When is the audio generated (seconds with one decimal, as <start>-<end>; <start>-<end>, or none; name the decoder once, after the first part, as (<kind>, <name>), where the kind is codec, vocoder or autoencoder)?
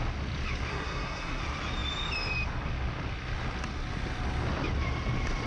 0.7-1.4 (codec, SNAC)